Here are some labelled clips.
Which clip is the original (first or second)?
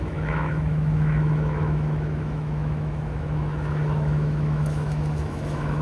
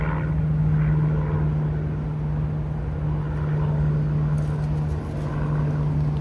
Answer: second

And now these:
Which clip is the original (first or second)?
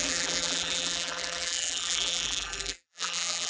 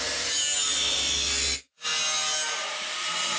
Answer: second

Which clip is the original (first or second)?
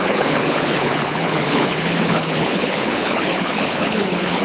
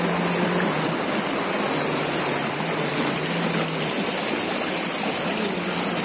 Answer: second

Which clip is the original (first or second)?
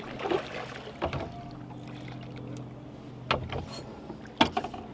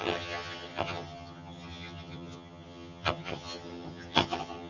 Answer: first